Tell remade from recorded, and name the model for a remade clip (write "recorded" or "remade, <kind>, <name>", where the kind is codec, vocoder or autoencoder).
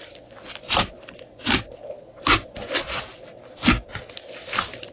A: recorded